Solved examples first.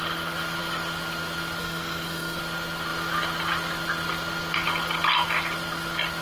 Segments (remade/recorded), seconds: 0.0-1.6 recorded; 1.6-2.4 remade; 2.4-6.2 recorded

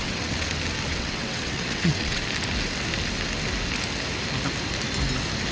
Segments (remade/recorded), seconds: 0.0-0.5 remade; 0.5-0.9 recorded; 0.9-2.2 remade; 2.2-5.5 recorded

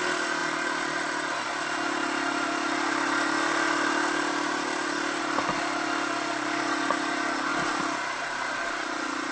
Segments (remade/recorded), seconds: 0.0-9.3 recorded

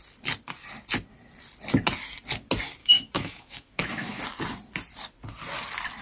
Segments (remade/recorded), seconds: 0.0-2.8 recorded; 2.8-4.2 remade; 4.2-6.0 recorded

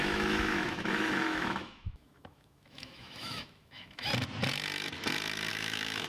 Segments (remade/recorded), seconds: 0.0-4.1 remade; 4.1-5.5 recorded; 5.5-6.1 remade

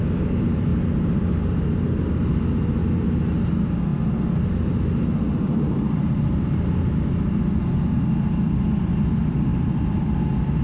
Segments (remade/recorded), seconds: 0.0-0.7 remade; 0.7-2.1 recorded; 2.1-2.8 remade; 2.8-3.5 recorded; 3.5-3.9 remade; 3.9-7.9 recorded; 7.9-10.6 remade